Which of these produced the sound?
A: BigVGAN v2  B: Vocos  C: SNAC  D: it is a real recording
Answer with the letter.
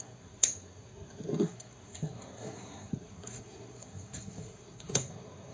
C